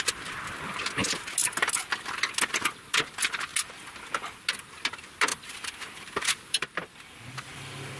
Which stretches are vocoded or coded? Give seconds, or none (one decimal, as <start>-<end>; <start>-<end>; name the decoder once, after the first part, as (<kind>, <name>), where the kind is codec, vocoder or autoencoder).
5.3-7.1 (vocoder, BigVGAN v2)

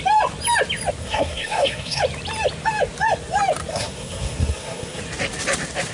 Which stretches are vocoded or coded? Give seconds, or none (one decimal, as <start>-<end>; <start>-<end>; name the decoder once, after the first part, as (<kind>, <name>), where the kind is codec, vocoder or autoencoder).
1.0-2.0 (codec, SNAC); 3.7-5.0

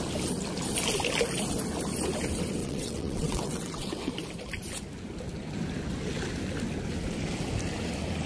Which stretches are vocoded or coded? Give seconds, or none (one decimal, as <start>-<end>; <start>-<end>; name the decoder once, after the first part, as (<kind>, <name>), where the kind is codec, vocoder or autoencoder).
2.6-4.1 (vocoder, WaveNeXt)